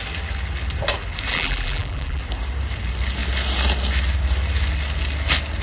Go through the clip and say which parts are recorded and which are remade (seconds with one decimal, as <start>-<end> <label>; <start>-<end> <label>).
0.0-1.3 recorded; 1.3-2.2 remade; 2.2-5.6 recorded